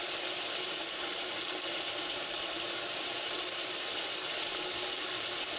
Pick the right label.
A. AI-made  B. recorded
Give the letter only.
B